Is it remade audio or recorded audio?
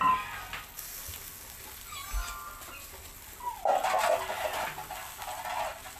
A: recorded